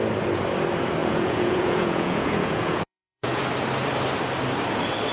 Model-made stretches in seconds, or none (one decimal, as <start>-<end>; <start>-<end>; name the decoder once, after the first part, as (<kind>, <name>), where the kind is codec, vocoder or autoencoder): 1.0-3.5 (vocoder, Vocos)